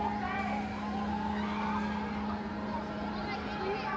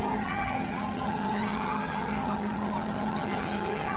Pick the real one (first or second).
first